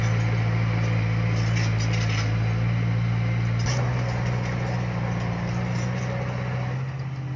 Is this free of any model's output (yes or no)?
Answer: yes